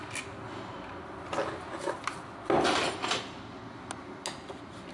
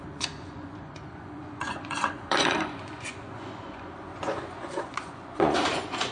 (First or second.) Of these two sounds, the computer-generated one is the second